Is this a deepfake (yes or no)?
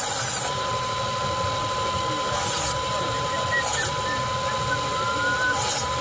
no